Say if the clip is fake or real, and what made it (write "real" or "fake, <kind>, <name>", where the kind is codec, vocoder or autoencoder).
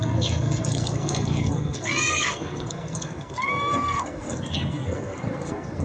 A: fake, codec, SNAC